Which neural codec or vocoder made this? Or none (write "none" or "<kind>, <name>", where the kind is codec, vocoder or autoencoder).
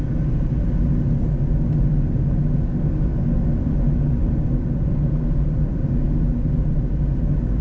none